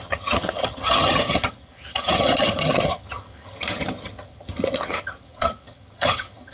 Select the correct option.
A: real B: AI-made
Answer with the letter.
B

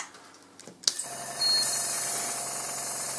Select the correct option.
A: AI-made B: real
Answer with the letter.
B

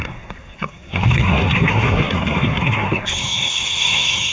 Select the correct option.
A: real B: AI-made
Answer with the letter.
B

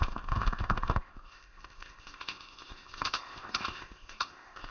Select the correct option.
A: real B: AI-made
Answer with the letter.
B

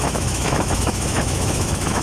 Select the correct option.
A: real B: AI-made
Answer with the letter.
B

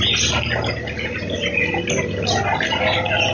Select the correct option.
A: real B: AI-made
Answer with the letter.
A